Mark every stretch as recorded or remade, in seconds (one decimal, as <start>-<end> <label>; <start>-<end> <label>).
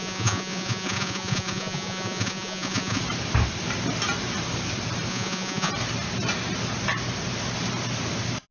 0.0-3.0 remade; 3.0-5.1 recorded; 5.1-5.7 remade; 5.7-8.5 recorded